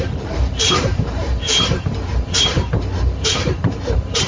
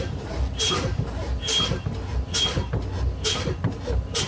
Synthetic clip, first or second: first